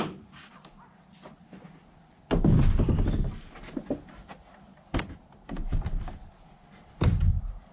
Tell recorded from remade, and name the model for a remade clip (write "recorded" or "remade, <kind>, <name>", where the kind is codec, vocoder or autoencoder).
recorded